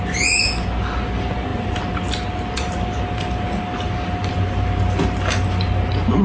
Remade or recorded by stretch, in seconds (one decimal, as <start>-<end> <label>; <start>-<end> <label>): 0.0-6.2 recorded